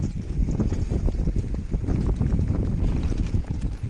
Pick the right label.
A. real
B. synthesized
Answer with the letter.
A